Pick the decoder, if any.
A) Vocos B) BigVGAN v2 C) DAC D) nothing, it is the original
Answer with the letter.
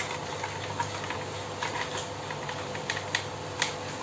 D